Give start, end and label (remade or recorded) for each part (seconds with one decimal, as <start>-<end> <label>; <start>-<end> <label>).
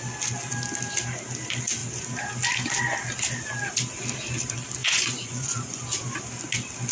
0.0-4.8 recorded; 4.8-5.8 remade; 5.8-6.9 recorded